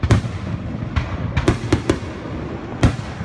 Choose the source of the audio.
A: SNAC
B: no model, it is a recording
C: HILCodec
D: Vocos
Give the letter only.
B